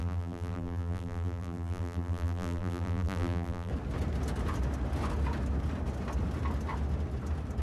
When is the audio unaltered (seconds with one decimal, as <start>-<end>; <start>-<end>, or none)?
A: 3.7-7.6